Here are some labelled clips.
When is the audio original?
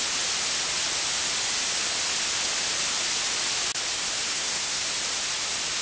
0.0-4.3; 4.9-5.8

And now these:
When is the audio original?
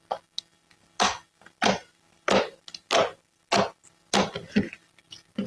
0.0-5.5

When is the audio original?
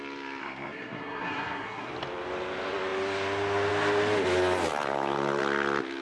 0.0-0.4; 1.9-6.0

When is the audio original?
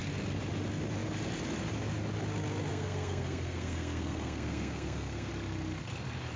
0.0-2.7; 5.3-6.4